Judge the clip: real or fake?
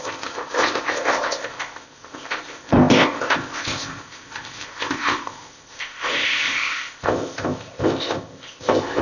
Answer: fake